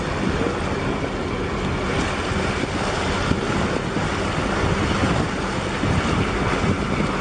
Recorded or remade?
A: recorded